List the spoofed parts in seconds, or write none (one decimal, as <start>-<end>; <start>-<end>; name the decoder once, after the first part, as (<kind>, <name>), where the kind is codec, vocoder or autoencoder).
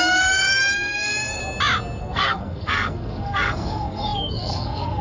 0.0-1.4 (codec, SNAC); 2.0-5.0